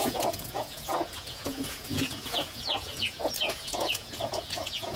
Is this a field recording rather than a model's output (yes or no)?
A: no